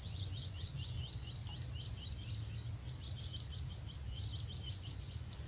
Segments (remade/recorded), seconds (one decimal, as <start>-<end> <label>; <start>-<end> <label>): 0.0-1.4 remade; 1.4-4.7 recorded; 4.7-5.5 remade